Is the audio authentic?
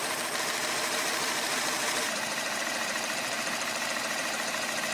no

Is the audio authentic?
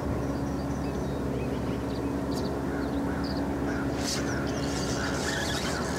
yes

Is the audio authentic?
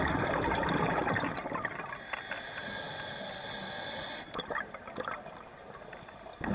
yes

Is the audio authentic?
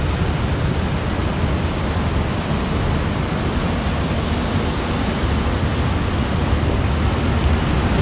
yes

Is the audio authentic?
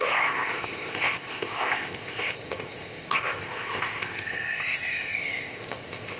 no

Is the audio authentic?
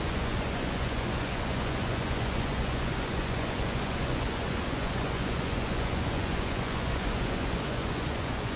no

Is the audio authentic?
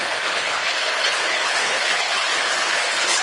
no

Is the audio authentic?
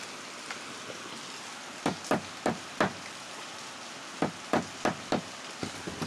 yes